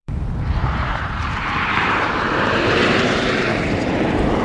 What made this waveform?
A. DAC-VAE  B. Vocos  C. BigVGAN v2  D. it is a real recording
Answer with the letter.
C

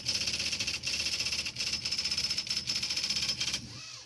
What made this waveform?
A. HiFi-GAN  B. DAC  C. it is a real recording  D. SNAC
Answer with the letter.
C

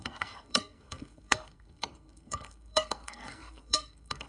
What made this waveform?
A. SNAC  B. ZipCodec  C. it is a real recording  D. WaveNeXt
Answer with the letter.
A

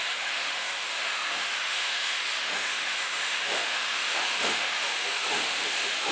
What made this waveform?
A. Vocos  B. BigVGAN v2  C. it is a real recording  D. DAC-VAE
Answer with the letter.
D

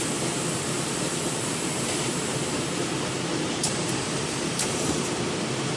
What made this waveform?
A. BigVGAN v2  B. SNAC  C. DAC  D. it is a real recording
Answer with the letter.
A